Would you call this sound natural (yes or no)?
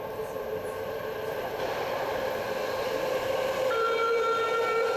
no